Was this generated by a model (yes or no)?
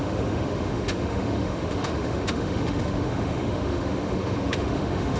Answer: yes